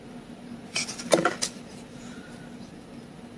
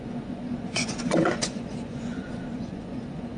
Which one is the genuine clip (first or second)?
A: first